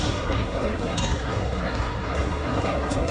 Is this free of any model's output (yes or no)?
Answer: no